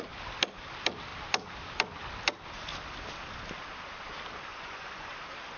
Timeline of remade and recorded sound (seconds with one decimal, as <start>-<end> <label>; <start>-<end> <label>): 0.0-4.5 recorded; 4.5-5.1 remade; 5.1-5.6 recorded

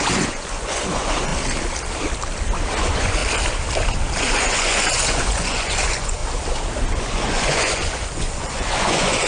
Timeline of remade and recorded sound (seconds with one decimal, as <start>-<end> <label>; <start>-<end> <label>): 0.0-1.3 remade; 1.3-2.8 recorded; 2.8-3.2 remade; 3.2-4.2 recorded; 4.2-6.2 remade; 6.2-6.9 recorded; 6.9-9.3 remade

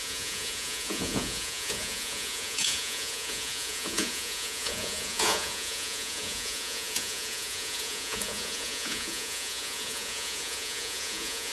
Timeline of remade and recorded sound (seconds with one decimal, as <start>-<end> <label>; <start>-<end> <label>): 0.0-11.5 remade